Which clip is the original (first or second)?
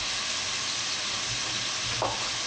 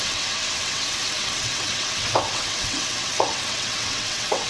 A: first